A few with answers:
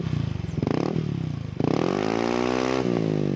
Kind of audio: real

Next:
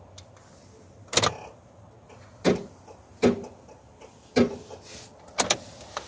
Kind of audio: real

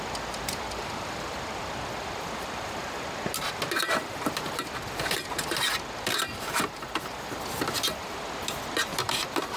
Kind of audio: fake